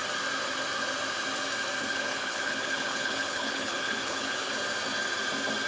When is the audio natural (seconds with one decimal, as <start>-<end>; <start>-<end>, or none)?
0.0-1.9; 4.5-5.7